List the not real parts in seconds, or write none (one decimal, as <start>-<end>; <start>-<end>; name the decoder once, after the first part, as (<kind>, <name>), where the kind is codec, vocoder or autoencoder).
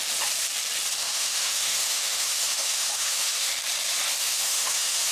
1.0-3.5 (autoencoder, DAC-VAE); 4.2-5.1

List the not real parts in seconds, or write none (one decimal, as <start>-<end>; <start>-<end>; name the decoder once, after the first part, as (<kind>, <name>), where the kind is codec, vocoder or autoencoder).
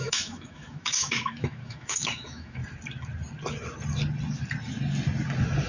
0.0-2.6 (autoencoder, DAC-VAE)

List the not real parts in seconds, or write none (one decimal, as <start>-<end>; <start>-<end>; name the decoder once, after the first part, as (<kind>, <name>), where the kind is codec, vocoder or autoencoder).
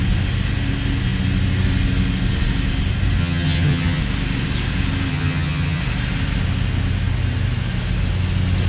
3.2-4.0 (vocoder, HiFi-GAN); 5.1-5.8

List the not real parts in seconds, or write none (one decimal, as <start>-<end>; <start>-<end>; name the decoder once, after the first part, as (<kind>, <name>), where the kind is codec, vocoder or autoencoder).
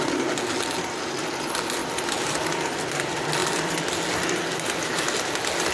1.8-2.7 (vocoder, BigVGAN v2)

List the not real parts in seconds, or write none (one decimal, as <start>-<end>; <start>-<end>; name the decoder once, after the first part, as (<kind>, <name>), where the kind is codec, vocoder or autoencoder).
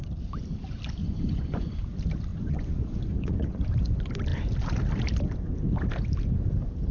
1.0-1.8 (vocoder, Vocos); 2.3-3.6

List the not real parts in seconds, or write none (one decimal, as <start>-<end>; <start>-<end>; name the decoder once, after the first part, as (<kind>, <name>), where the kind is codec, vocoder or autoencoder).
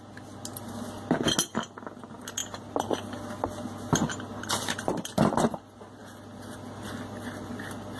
none